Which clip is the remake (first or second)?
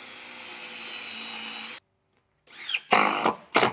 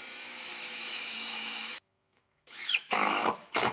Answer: second